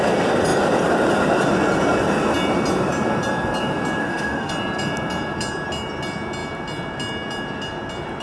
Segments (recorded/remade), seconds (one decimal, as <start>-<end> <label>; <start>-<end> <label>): 0.0-4.0 recorded; 4.0-4.5 remade; 4.5-8.2 recorded